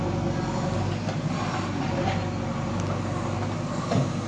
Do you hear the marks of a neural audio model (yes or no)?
no